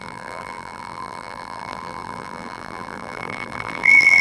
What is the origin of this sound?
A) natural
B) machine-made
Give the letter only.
B